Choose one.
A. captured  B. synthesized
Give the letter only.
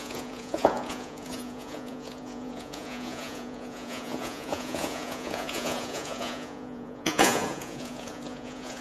B